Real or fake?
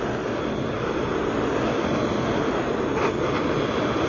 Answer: real